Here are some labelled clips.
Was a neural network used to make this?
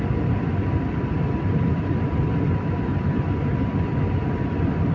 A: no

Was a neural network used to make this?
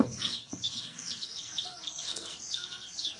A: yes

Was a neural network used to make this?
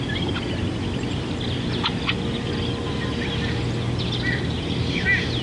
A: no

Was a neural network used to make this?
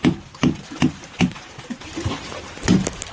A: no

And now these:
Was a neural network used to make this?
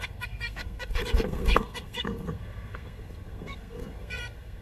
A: yes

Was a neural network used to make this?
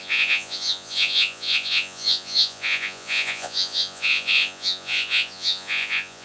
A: yes